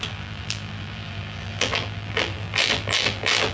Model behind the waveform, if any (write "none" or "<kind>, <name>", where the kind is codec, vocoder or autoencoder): vocoder, BigVGAN v2